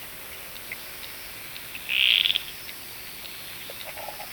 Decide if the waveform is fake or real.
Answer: real